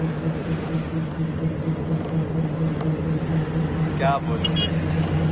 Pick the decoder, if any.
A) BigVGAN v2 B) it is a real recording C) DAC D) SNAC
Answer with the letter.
B